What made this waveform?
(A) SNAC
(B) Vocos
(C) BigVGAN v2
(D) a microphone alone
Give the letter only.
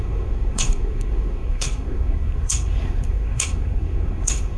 A